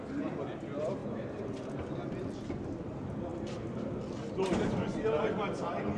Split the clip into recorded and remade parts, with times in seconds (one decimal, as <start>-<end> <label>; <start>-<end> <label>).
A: 0.0-1.0 recorded; 1.0-1.6 remade; 1.6-6.0 recorded